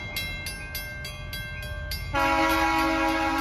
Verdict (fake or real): real